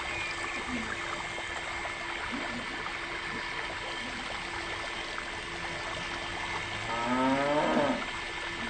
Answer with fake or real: real